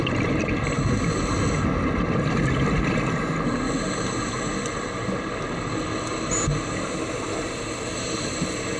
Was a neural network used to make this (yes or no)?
no